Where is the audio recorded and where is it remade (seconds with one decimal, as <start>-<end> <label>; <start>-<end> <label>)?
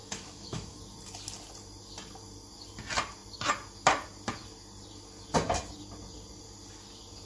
0.0-0.8 remade; 0.8-7.3 recorded